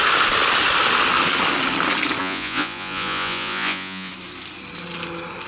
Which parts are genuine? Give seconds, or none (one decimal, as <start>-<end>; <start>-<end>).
0.0-2.2; 4.1-5.5